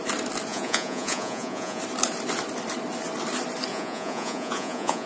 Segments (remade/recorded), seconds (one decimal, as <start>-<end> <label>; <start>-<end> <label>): 0.0-0.5 recorded; 0.5-1.8 remade; 1.8-3.7 recorded; 3.7-5.1 remade